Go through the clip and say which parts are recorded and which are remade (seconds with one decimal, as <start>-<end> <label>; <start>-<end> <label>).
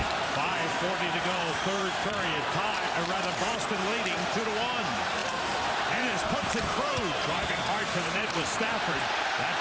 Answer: 0.0-3.2 remade; 3.2-5.2 recorded; 5.2-9.2 remade; 9.2-9.6 recorded